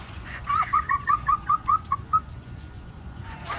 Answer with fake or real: fake